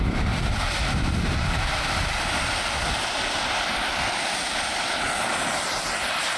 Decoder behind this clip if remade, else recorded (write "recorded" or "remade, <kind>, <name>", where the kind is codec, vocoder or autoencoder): remade, vocoder, BigVGAN v2